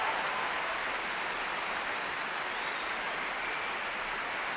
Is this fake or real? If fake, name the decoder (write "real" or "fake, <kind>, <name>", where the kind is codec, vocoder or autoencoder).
real